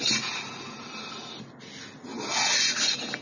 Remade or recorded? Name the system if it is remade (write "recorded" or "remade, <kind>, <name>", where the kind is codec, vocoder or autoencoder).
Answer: recorded